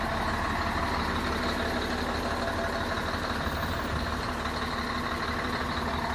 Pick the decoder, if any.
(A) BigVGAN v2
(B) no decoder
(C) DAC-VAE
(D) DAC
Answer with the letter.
B